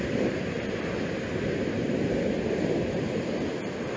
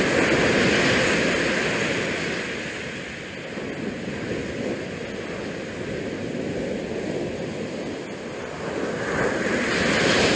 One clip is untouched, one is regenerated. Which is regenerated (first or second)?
first